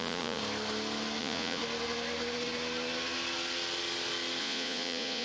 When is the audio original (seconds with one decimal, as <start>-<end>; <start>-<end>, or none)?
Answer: 0.4-1.2; 1.6-4.4